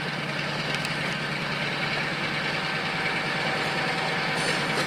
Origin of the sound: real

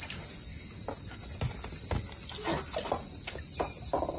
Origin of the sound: real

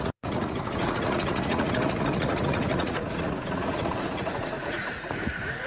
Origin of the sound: fake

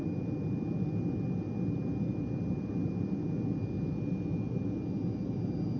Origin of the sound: real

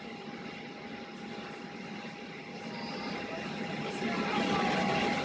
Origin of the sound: real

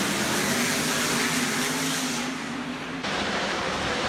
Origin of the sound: real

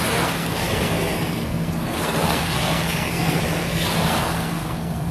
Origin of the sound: fake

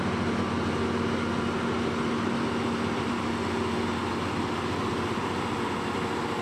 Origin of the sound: real